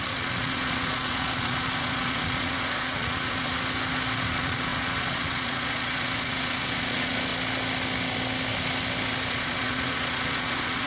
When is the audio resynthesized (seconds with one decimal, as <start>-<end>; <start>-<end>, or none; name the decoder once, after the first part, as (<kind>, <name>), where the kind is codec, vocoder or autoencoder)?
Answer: 0.0-3.5 (vocoder, Vocos); 4.3-7.3; 9.3-10.9